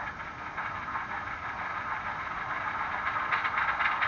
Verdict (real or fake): real